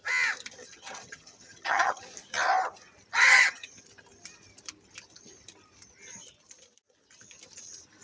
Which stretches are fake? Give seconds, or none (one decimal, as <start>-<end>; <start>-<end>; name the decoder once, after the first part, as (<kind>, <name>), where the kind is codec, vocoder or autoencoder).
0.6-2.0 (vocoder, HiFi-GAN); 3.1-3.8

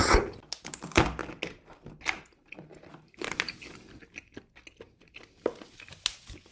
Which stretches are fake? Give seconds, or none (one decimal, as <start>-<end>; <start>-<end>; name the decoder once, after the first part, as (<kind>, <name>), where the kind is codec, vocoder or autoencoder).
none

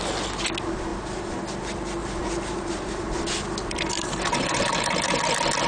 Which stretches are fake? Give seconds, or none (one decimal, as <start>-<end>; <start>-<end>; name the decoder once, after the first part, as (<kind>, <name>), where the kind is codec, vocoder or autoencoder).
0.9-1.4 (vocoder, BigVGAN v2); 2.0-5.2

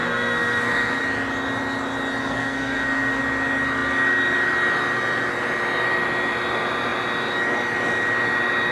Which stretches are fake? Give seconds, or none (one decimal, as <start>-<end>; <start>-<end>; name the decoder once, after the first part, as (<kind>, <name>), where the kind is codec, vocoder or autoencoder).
0.0-1.0 (codec, SNAC); 2.2-3.2

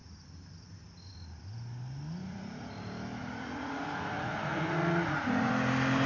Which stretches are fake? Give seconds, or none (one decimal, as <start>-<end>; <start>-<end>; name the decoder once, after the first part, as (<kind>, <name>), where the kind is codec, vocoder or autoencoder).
2.2-2.7 (vocoder, Vocos); 3.2-5.5

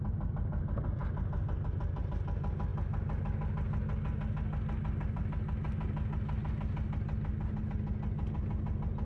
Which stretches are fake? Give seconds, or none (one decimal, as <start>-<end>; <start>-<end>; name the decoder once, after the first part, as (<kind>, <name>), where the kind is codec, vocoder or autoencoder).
none